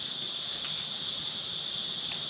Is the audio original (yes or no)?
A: yes